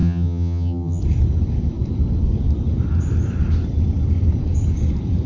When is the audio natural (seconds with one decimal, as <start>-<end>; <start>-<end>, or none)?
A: 1.0-5.3